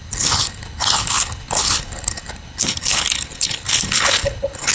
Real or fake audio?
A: fake